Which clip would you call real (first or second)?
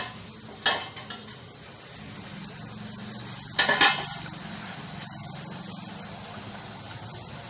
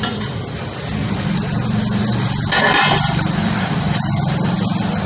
first